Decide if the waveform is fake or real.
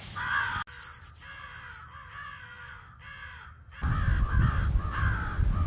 real